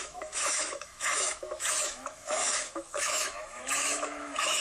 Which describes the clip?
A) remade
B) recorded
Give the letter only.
A